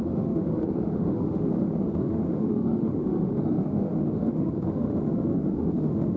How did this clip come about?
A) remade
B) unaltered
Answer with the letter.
A